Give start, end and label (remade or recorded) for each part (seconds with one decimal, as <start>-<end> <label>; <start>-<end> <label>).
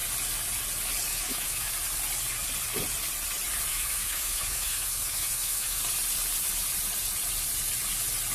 0.0-1.1 recorded; 1.1-1.7 remade; 1.7-3.7 recorded; 3.7-5.8 remade; 5.8-8.3 recorded